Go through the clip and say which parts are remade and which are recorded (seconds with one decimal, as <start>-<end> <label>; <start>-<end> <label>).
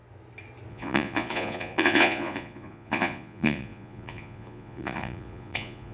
0.0-0.7 recorded; 0.7-5.9 remade